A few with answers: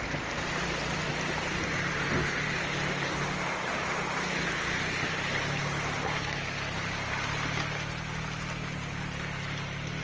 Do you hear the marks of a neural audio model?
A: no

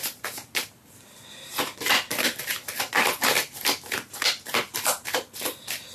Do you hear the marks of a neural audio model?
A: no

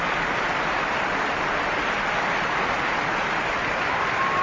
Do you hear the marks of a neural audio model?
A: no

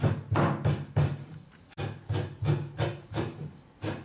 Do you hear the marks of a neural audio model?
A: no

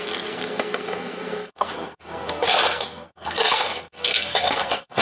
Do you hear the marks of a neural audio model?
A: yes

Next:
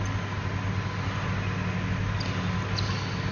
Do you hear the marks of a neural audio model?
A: no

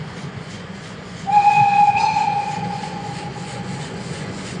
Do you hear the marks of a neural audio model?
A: yes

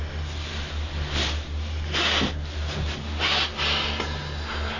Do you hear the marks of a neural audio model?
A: no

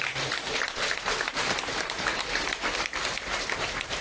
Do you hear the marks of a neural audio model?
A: yes